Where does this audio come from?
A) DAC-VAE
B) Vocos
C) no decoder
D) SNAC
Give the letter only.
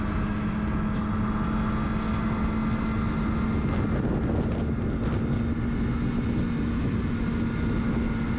C